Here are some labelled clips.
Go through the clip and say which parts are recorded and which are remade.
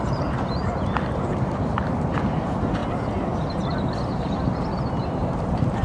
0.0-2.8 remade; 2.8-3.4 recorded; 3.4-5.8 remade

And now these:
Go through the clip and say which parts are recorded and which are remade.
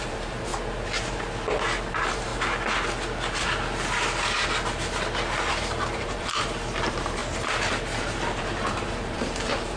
0.0-0.5 remade; 0.5-1.9 recorded; 1.9-2.3 remade; 2.3-5.5 recorded; 5.5-7.2 remade; 7.2-8.0 recorded; 8.0-9.8 remade